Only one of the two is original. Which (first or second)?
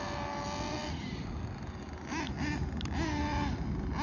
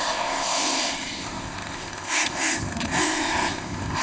first